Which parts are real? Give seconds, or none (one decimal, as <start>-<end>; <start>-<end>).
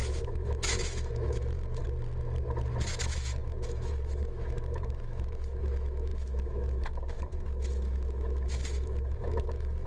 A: 1.8-2.9